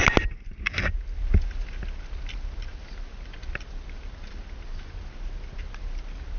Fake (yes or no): no